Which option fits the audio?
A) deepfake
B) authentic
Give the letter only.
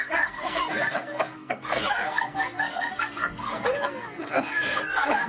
A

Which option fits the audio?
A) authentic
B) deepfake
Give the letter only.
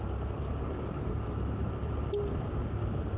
A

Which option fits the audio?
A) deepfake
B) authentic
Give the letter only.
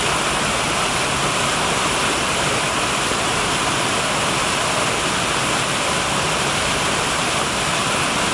B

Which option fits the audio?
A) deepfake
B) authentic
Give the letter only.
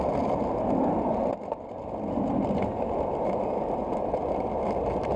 B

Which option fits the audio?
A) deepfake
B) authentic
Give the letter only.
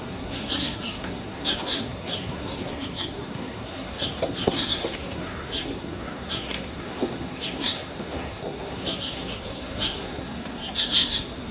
A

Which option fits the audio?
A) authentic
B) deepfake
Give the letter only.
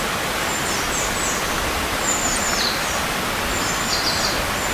A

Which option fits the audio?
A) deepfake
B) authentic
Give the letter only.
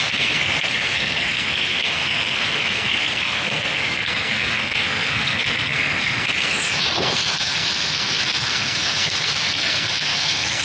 A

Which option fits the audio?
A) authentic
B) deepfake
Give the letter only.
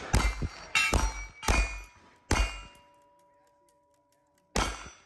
A